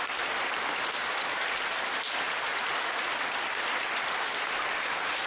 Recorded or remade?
recorded